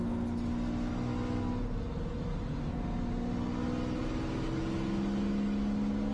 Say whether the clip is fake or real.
real